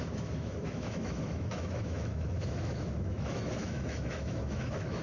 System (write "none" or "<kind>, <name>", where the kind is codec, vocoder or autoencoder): autoencoder, DAC-VAE